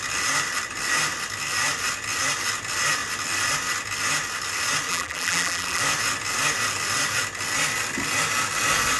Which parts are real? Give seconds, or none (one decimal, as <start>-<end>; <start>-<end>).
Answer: 0.0-4.9; 5.8-9.0

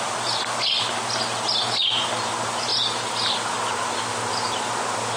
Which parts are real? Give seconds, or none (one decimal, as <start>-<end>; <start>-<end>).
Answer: 0.0-1.8; 2.3-2.7; 4.0-5.2

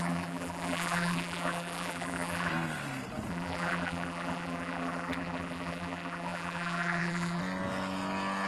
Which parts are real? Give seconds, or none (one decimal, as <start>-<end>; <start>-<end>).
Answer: 2.5-3.3; 7.4-8.5

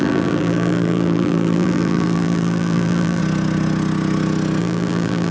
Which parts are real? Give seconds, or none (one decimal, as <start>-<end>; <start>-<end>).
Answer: 3.2-4.6

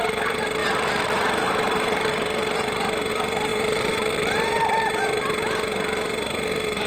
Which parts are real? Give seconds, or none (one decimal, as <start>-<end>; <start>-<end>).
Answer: none